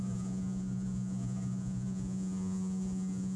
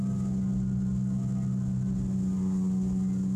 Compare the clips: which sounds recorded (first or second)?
second